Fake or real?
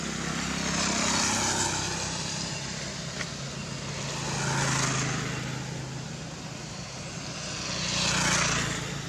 real